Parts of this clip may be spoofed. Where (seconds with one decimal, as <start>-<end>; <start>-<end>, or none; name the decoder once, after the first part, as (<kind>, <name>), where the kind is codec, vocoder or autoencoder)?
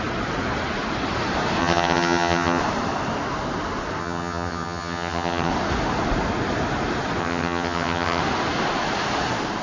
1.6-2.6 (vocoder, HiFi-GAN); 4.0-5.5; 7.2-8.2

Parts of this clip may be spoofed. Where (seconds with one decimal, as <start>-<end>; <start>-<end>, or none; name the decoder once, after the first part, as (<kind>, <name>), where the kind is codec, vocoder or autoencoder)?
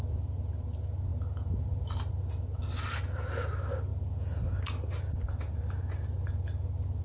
none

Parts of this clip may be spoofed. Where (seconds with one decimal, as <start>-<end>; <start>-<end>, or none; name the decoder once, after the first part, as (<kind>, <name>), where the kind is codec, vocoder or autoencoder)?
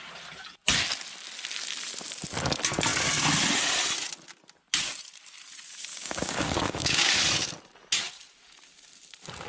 5.9-7.1 (codec, DAC)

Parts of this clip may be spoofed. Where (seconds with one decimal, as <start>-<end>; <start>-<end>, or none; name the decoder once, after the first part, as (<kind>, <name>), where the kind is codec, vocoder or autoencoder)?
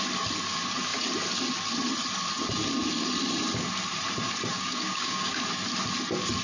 4.5-5.3 (codec, DAC)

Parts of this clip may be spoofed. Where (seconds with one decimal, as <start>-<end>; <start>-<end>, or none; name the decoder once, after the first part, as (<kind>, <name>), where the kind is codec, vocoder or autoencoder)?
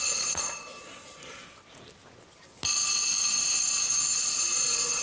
0.0-1.4 (vocoder, Vocos); 4.4-5.0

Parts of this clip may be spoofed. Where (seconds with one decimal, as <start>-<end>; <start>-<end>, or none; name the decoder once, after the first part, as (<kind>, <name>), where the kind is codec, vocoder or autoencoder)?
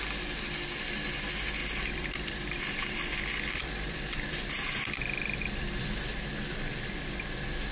1.6-6.1 (vocoder, BigVGAN v2)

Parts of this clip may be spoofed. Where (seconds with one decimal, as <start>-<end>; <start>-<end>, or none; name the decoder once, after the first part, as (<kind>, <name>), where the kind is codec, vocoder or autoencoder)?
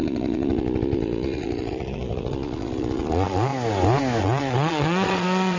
0.0-3.5 (vocoder, Vocos); 4.2-5.6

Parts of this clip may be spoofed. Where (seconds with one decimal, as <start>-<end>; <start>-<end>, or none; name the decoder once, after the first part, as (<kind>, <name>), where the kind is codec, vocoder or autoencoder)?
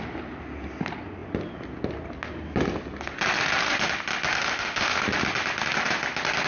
4.3-5.0 (autoencoder, DAC-VAE)